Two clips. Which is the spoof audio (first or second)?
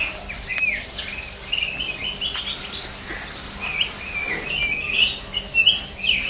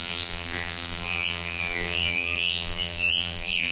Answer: second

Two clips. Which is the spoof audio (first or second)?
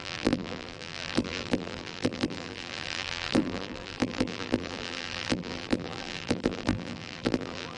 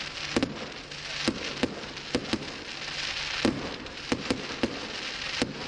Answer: first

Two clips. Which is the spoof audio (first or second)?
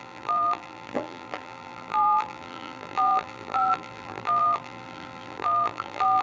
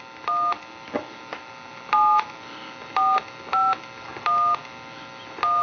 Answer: first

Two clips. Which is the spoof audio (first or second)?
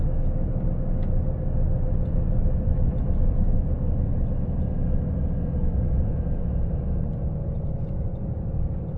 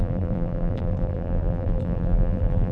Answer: second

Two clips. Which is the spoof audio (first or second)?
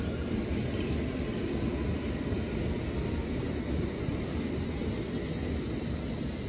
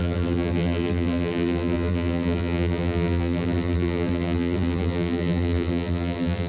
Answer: second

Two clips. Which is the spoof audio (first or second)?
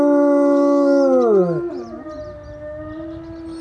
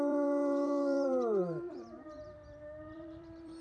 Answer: second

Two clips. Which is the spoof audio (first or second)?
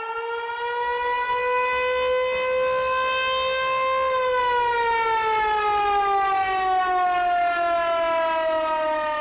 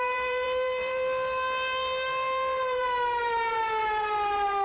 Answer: second